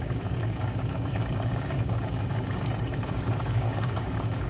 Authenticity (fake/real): fake